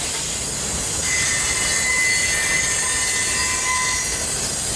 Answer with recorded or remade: recorded